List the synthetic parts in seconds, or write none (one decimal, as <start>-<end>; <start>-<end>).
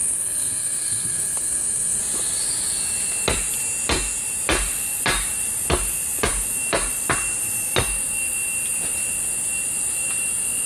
0.0-2.0